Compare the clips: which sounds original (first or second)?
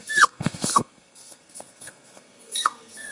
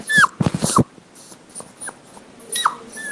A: second